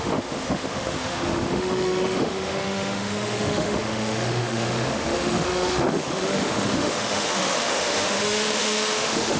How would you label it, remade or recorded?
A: remade